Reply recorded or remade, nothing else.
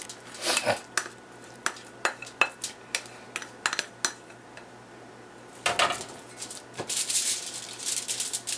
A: recorded